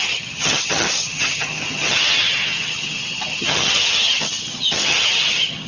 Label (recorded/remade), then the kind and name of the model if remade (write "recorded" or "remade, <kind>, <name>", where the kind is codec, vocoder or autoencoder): remade, vocoder, HiFi-GAN